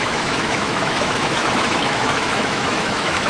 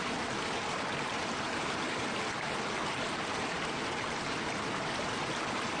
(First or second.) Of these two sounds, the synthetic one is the first